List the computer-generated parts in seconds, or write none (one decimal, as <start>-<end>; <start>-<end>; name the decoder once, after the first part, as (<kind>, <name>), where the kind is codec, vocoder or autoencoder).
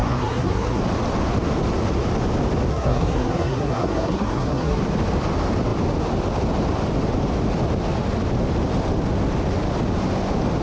0.0-0.8 (codec, SNAC); 2.7-4.8